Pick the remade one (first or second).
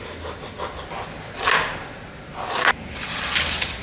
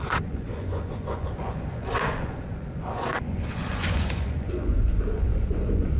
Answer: second